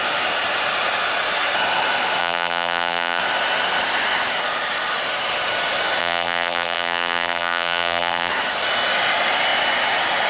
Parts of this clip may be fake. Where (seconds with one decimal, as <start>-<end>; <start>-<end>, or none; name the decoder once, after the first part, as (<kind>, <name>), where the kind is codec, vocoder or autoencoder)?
2.2-3.2 (vocoder, BigVGAN v2); 6.0-8.3